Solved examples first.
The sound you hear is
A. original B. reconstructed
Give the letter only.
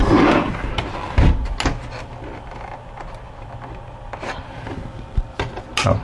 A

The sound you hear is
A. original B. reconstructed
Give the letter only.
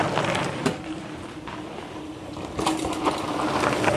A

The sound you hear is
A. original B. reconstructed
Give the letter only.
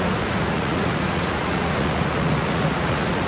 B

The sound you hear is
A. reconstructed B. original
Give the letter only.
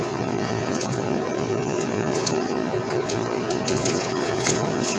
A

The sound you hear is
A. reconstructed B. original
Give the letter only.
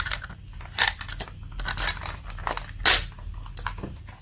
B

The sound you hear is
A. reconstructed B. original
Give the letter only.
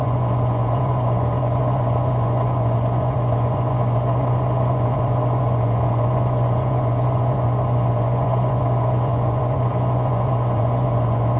A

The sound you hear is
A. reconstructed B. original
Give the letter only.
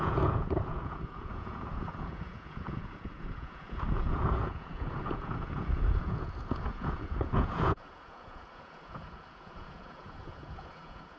A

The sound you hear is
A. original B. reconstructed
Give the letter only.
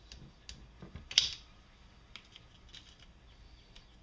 A